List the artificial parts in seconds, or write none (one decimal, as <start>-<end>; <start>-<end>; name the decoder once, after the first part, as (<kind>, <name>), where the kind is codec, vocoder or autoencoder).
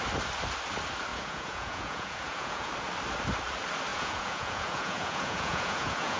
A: 1.1-2.7 (vocoder, Vocos); 3.9-6.2